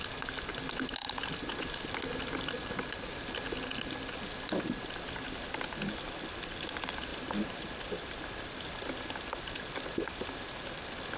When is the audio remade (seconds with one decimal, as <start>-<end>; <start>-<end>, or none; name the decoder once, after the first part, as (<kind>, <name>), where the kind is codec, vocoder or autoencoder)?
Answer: none